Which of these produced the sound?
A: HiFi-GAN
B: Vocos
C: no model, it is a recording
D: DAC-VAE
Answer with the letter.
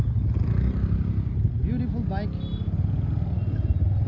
C